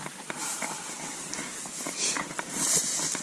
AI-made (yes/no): no